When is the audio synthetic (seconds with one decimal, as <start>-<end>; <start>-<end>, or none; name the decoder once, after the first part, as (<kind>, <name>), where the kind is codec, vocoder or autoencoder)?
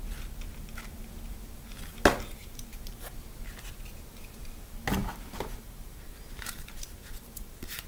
2.4-3.1 (vocoder, BigVGAN v2); 5.0-7.9